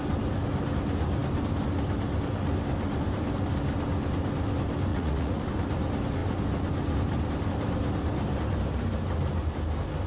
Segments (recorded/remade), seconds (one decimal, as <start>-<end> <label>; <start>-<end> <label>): 0.0-4.9 recorded; 4.9-5.4 remade; 5.4-10.1 recorded